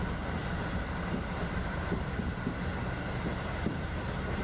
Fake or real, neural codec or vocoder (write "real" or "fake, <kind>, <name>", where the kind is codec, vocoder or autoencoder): fake, vocoder, BigVGAN v2